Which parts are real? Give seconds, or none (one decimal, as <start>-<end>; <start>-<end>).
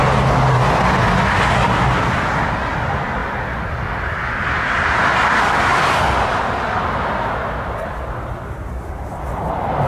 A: 0.0-9.9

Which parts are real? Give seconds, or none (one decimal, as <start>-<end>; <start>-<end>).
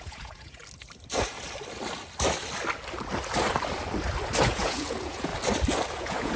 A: 0.6-4.4; 5.3-5.9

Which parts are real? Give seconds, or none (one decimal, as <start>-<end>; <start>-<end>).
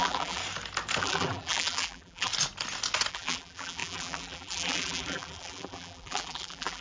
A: 0.4-1.0; 2.3-3.1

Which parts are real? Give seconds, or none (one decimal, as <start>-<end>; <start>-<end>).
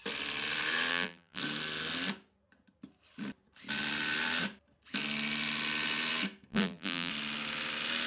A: 0.0-0.9; 1.4-6.5; 7.1-8.1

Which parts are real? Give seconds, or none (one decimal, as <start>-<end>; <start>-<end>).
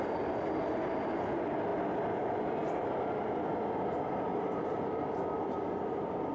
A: 0.0-6.3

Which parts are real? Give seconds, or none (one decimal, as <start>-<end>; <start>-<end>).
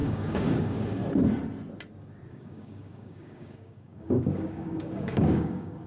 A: 1.0-2.3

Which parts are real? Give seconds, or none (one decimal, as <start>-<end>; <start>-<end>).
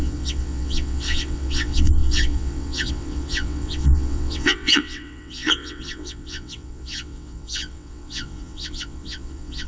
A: none